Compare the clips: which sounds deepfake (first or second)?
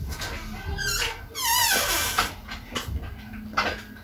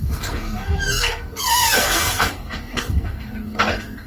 second